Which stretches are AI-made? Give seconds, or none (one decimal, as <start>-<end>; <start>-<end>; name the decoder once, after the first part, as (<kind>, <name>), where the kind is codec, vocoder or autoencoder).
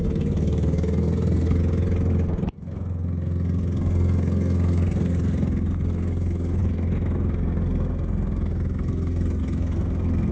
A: 0.0-1.6 (codec, SNAC); 2.5-10.3